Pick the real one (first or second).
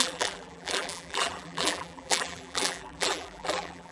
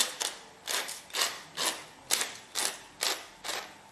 second